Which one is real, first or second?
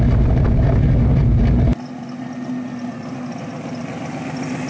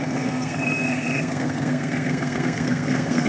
first